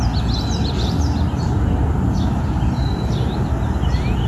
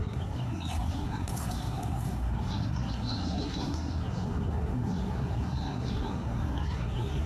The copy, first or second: second